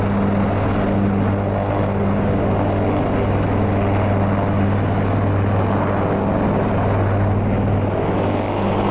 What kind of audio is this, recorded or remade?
recorded